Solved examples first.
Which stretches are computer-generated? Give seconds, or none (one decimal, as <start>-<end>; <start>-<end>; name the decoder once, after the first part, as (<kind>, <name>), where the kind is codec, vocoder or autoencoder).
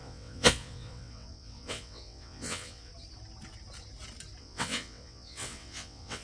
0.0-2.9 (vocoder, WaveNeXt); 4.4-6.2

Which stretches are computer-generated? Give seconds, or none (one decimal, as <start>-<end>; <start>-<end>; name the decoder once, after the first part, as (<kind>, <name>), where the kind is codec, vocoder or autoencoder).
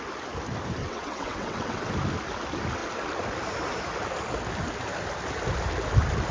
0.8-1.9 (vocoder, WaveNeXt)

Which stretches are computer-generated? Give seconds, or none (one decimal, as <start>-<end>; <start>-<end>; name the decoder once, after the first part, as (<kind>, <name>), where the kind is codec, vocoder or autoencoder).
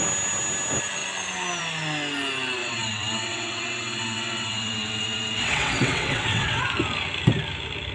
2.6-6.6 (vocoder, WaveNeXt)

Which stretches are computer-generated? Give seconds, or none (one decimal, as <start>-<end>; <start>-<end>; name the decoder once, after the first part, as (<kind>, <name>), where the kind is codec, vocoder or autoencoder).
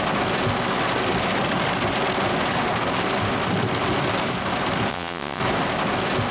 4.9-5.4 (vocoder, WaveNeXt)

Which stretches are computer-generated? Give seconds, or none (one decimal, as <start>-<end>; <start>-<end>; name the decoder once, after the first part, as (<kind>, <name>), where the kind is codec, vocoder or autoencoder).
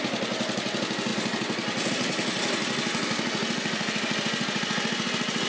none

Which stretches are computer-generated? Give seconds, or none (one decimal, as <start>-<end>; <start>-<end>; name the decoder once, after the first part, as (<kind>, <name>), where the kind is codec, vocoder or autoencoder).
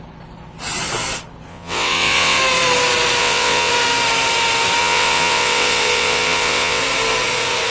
1.5-2.4 (vocoder, WaveNeXt); 3.2-3.7; 4.8-6.8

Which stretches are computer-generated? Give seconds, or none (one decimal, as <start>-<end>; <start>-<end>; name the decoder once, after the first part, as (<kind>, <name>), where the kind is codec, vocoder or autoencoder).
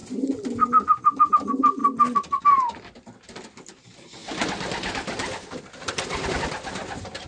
none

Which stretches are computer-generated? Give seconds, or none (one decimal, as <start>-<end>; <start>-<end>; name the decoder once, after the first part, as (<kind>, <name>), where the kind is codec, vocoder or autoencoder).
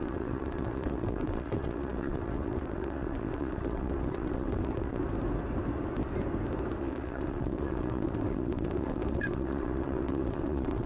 0.0-5.0 (vocoder, WaveNeXt); 6.8-10.9